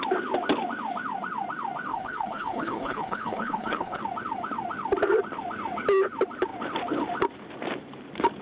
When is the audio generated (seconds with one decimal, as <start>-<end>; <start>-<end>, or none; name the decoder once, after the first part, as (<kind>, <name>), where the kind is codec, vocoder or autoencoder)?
1.9-4.0 (codec, HILCodec)